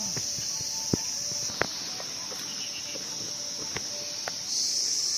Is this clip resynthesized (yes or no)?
no